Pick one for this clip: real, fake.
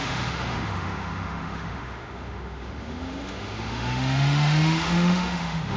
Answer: fake